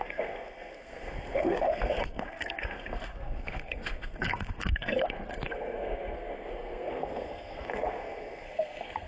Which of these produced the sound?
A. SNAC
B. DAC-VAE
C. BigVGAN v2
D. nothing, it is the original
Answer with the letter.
A